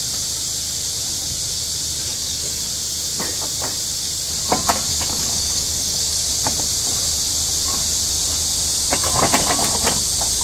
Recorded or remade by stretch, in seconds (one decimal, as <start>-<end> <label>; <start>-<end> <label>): 0.0-2.1 recorded; 2.1-2.7 remade; 2.7-4.9 recorded; 4.9-6.3 remade; 6.3-10.4 recorded